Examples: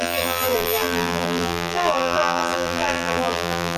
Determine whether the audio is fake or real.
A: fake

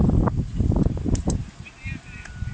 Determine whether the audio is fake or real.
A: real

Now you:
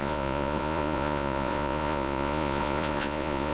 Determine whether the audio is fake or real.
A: fake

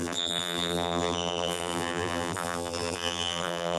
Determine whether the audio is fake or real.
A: fake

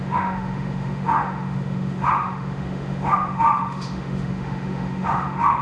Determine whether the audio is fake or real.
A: fake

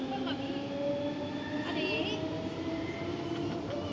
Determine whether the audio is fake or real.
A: real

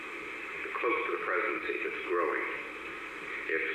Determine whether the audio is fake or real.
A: real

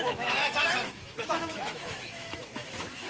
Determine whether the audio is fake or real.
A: fake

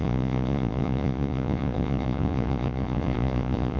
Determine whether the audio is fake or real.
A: fake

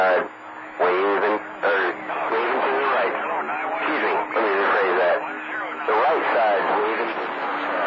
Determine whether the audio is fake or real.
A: real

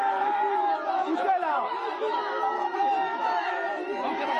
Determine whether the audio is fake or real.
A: fake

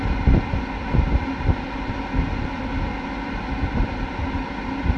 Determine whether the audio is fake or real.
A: real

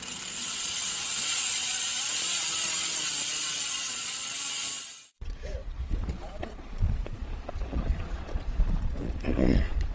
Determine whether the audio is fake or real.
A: fake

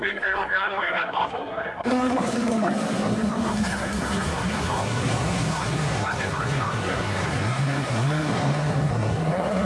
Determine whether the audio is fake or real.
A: fake